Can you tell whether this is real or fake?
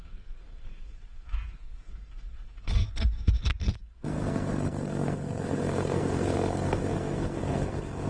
fake